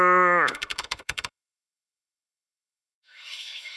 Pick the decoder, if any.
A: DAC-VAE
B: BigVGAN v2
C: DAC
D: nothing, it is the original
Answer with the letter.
A